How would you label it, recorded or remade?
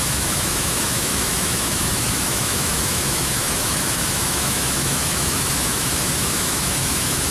remade